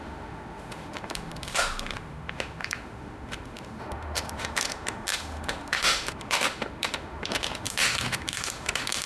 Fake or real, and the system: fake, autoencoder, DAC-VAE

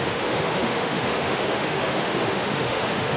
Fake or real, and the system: fake, autoencoder, DAC-VAE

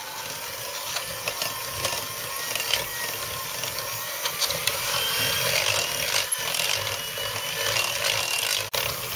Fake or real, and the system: real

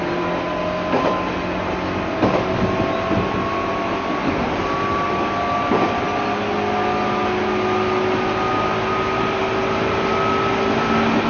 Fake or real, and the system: real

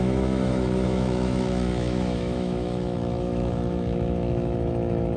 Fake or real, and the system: fake, autoencoder, DAC-VAE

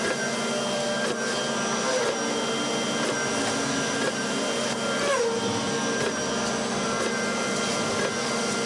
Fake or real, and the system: real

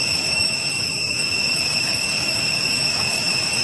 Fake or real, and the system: fake, autoencoder, DAC-VAE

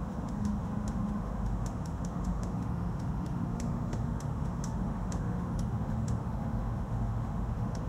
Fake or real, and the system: fake, autoencoder, DAC-VAE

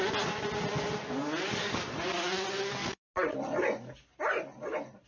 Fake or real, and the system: real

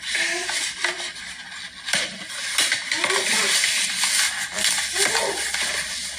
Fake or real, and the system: real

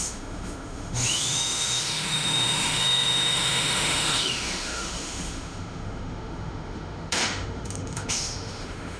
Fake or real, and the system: fake, autoencoder, DAC-VAE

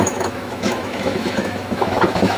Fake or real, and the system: fake, autoencoder, DAC-VAE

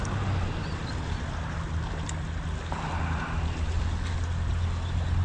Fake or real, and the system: real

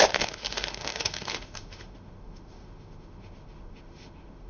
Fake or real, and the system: fake, autoencoder, DAC-VAE